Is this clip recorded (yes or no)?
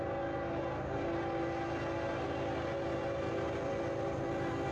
yes